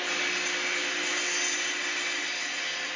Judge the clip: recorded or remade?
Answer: recorded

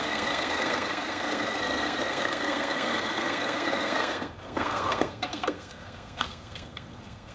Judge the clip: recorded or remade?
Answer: remade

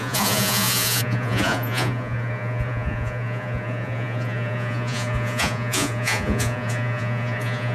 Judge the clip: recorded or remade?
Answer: remade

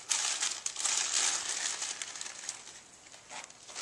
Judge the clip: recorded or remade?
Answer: recorded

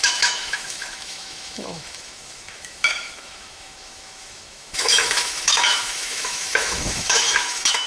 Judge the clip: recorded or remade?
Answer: remade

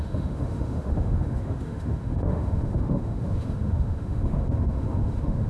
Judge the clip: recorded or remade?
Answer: remade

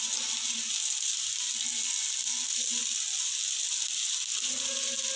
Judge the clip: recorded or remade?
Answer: recorded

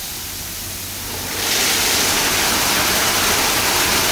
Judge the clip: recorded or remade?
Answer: recorded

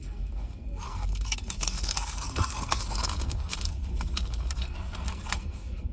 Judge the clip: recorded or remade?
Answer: remade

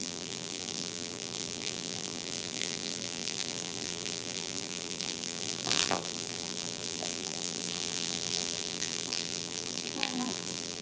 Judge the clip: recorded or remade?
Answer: remade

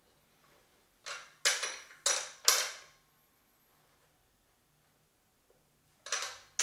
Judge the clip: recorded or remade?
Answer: recorded